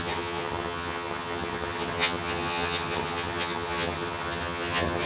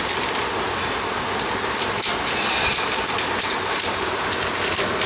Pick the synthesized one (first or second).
first